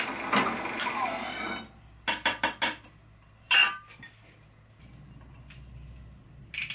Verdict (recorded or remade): recorded